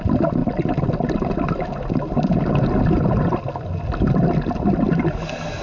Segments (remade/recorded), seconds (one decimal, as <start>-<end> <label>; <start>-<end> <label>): 0.0-5.6 recorded